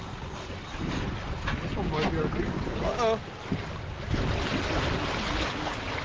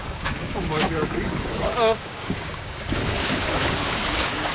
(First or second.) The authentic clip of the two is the first